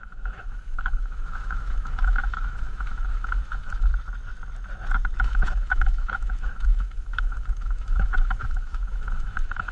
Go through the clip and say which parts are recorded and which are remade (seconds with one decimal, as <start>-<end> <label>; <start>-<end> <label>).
0.0-3.9 remade; 3.9-5.2 recorded; 5.2-9.7 remade